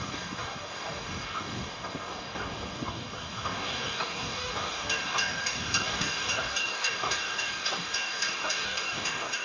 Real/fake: fake